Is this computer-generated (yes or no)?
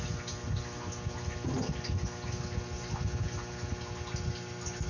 no